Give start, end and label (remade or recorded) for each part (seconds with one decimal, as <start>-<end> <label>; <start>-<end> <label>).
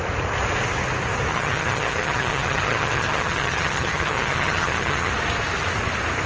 0.0-1.3 recorded; 1.3-5.1 remade; 5.1-6.3 recorded